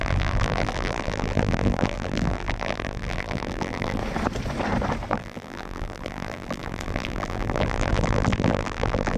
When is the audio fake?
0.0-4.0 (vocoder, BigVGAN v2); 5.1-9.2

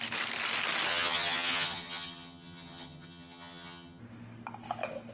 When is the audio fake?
0.9-4.0 (vocoder, HiFi-GAN)

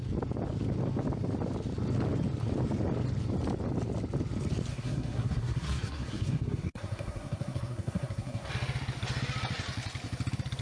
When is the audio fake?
4.7-8.5 (codec, SNAC)

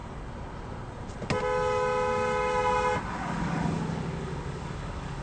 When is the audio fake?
3.1-5.2 (codec, DAC)

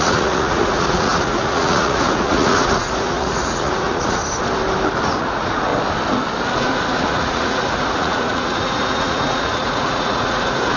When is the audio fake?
0.0-4.2 (vocoder, Vocos); 5.2-5.7; 6.6-10.8

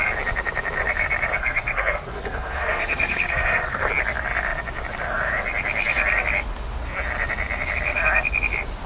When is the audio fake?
1.4-3.9 (codec, SNAC)